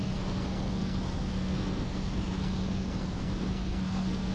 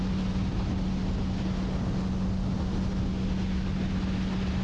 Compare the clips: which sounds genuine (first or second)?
second